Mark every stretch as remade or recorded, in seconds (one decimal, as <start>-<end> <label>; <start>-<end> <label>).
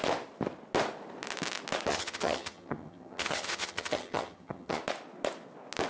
0.0-1.9 recorded; 1.9-4.8 remade; 4.8-5.9 recorded